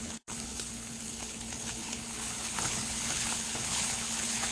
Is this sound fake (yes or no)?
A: yes